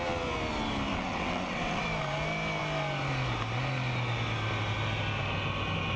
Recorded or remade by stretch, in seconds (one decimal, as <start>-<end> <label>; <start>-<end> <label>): 0.0-0.9 recorded; 0.9-1.8 remade; 1.8-6.0 recorded